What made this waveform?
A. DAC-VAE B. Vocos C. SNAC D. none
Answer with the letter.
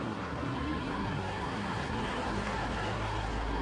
C